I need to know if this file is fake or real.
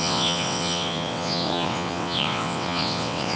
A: fake